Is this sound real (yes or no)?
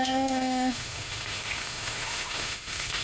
no